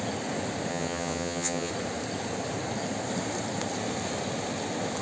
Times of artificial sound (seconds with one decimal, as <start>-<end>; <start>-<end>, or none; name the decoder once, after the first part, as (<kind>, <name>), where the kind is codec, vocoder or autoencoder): 0.7-1.7 (vocoder, HiFi-GAN)